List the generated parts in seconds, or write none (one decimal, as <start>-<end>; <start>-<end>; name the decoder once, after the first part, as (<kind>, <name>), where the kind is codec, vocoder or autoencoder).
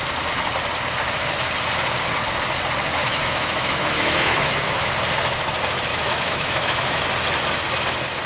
3.0-4.9 (autoencoder, DAC-VAE); 5.9-7.0